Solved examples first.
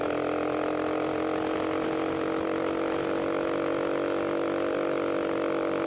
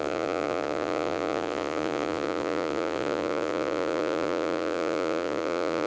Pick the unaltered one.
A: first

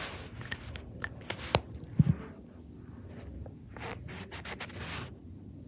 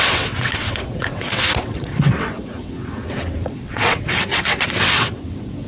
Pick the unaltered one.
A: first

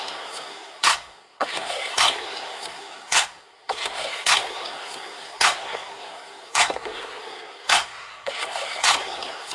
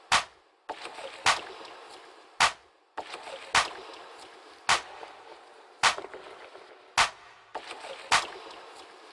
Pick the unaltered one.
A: second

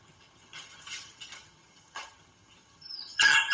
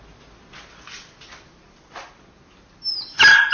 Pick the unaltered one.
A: second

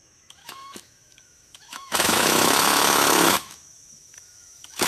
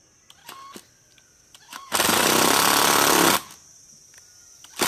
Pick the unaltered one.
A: second